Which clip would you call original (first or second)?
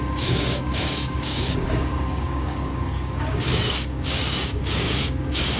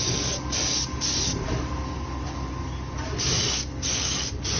second